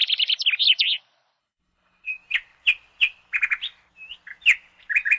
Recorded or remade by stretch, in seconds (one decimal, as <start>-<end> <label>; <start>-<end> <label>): 0.0-1.4 recorded; 1.4-2.1 remade; 2.1-5.2 recorded